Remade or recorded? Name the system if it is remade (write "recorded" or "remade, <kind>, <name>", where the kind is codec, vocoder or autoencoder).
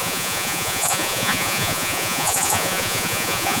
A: remade, vocoder, Vocos